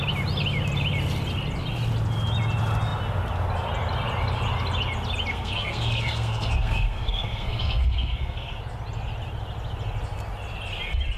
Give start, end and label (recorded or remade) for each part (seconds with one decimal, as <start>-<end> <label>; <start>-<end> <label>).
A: 0.0-5.3 recorded; 5.3-8.6 remade; 8.6-11.2 recorded

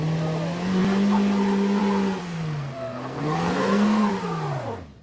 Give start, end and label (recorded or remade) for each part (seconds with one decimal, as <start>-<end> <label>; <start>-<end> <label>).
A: 0.0-2.2 recorded; 2.2-4.1 remade; 4.1-5.0 recorded

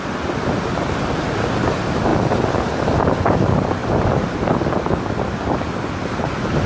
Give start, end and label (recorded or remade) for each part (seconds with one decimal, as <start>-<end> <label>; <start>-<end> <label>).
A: 0.0-6.7 recorded

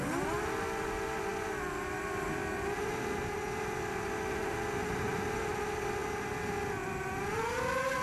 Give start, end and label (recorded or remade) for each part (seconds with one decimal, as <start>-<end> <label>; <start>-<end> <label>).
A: 0.0-8.0 recorded

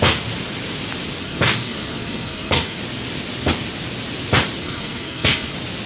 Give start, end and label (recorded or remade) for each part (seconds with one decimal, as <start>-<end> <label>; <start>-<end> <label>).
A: 0.0-1.2 recorded; 1.2-2.8 remade; 2.8-4.6 recorded; 4.6-5.5 remade; 5.5-5.9 recorded

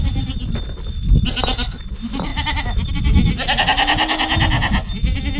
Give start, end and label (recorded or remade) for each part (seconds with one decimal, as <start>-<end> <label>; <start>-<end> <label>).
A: 0.0-5.4 recorded

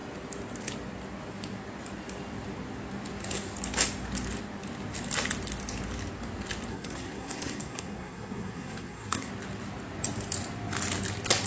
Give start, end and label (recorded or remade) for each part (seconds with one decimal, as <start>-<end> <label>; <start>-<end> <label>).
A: 0.0-6.7 recorded; 6.7-9.3 remade; 9.3-11.5 recorded

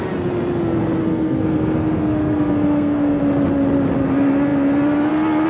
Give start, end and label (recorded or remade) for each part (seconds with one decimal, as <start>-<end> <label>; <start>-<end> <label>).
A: 0.0-1.0 recorded; 1.0-3.2 remade; 3.2-5.5 recorded